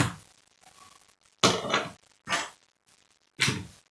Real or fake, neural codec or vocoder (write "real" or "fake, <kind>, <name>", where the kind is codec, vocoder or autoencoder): real